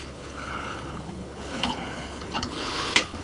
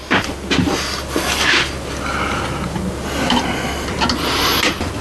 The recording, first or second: second